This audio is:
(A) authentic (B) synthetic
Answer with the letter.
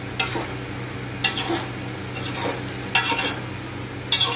A